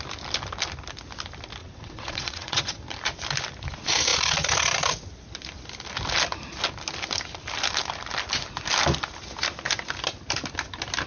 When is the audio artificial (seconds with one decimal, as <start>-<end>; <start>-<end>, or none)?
1.6-2.8